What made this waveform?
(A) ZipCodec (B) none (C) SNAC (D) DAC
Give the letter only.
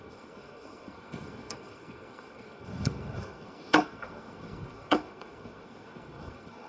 C